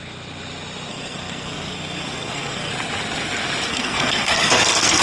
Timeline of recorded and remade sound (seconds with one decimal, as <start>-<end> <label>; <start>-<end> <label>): 0.0-0.9 recorded; 0.9-2.7 remade; 2.7-3.7 recorded; 3.7-5.0 remade